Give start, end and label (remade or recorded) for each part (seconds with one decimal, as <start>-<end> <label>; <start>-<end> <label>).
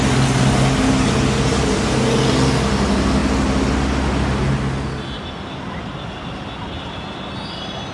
0.0-7.9 recorded